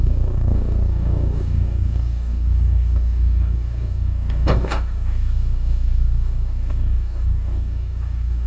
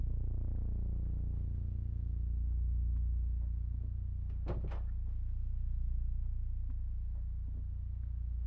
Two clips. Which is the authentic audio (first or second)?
second